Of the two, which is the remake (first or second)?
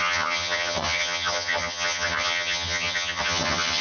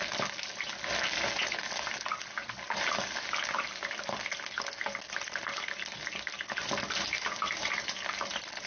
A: first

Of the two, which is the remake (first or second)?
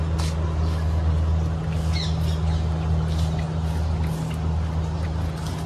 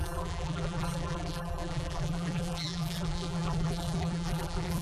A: second